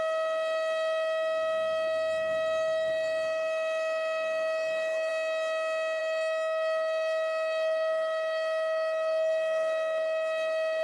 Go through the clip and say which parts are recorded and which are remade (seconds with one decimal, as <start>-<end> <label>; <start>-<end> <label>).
0.0-5.1 remade; 5.1-6.0 recorded; 6.0-10.8 remade